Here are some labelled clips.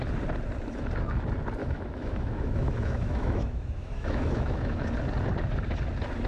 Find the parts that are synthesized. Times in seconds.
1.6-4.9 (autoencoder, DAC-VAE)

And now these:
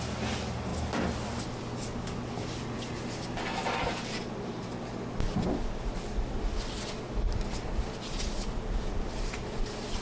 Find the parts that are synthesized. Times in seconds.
none

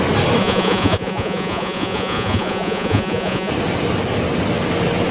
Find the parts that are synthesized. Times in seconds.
0.4-3.5 (vocoder, Vocos)

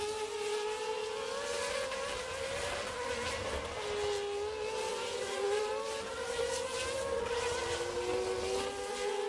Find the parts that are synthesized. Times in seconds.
4.9-5.7 (vocoder, Vocos)

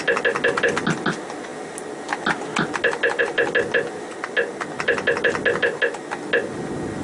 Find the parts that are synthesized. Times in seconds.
none

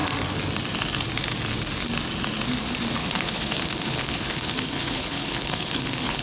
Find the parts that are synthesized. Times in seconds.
3.0-6.2 (codec, HILCodec)